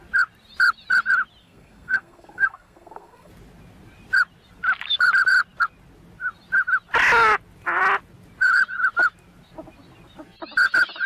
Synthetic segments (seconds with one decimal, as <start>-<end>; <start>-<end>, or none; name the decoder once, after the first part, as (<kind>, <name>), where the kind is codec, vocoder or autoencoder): 1.4-3.3 (codec, SNAC)